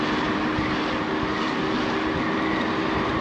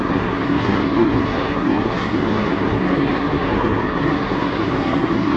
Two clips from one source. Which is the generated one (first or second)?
second